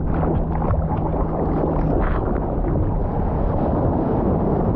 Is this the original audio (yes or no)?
yes